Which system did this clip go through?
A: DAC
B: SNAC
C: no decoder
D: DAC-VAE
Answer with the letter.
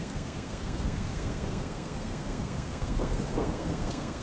B